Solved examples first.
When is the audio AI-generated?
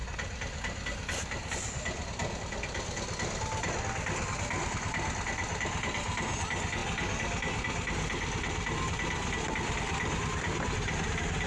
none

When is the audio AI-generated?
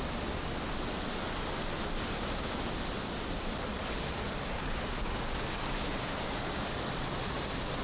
3.7-4.7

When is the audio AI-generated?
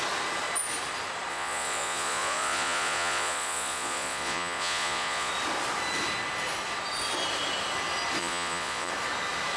1.3-5.3; 8.2-8.9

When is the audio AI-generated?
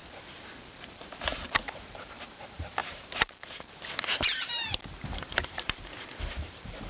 0.9-6.9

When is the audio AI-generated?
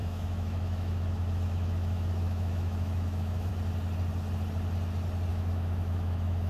0.0-3.5; 5.3-6.5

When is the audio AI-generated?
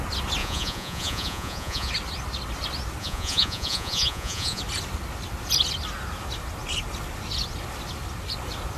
0.4-1.9; 3.0-4.6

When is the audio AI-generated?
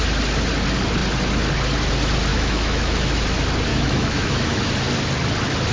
2.3-3.2; 3.7-4.6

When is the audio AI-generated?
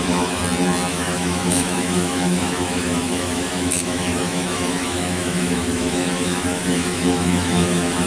0.0-0.4; 0.9-8.1